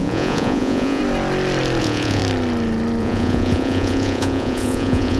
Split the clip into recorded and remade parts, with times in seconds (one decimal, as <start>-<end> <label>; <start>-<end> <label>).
0.0-1.0 remade; 1.0-1.8 recorded; 1.8-2.2 remade; 2.2-3.0 recorded; 3.0-5.2 remade

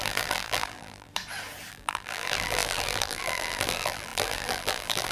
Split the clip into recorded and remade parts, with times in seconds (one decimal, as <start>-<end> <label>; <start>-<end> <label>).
0.0-1.1 remade; 1.1-1.7 recorded; 1.7-5.1 remade

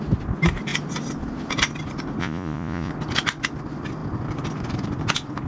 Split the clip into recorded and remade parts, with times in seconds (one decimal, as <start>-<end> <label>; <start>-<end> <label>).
0.0-2.2 recorded; 2.2-2.9 remade; 2.9-5.5 recorded

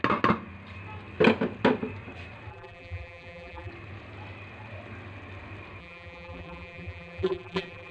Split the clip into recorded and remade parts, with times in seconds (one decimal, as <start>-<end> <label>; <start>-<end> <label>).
0.0-2.5 recorded; 2.5-3.7 remade; 3.7-5.8 recorded; 5.8-7.9 remade

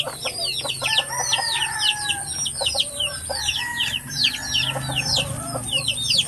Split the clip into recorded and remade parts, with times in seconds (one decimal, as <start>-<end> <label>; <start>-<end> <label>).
0.0-6.3 recorded

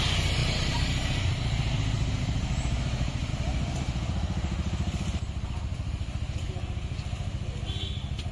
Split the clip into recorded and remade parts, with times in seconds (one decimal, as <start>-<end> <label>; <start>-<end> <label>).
0.0-0.4 recorded; 0.4-3.3 remade; 3.3-8.3 recorded

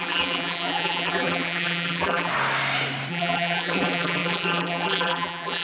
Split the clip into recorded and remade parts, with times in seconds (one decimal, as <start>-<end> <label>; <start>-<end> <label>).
0.0-2.3 remade; 2.3-3.1 recorded; 3.1-5.6 remade